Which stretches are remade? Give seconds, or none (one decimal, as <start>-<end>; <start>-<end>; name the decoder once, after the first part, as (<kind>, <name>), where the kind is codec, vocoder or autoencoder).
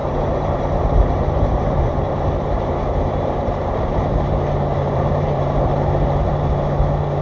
0.0-4.0 (vocoder, BigVGAN v2); 4.7-6.3